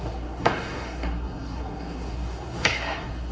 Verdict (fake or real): fake